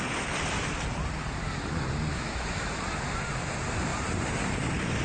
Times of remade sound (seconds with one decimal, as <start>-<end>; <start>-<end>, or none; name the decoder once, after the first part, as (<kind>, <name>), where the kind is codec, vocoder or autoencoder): 2.1-2.8 (autoencoder, DAC-VAE)